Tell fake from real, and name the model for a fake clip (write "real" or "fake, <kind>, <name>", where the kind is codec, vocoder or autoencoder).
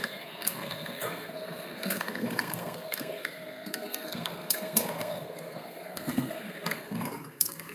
fake, codec, SNAC